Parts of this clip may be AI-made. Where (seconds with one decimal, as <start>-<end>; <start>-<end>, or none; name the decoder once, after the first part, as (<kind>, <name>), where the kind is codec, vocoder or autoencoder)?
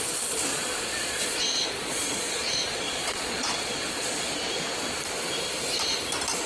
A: 0.5-4.4 (vocoder, Vocos)